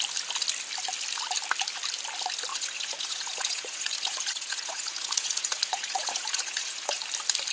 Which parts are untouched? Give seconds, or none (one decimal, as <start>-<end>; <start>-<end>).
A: 0.0-2.5; 7.0-7.5